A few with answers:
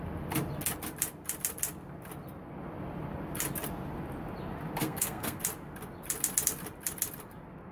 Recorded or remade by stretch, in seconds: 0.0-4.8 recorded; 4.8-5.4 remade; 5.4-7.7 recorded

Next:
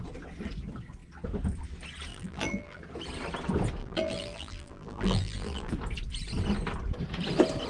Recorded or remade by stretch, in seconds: 0.0-2.1 recorded; 2.1-2.8 remade; 2.8-3.8 recorded; 3.8-5.7 remade; 5.7-7.7 recorded